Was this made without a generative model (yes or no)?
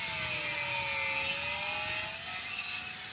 yes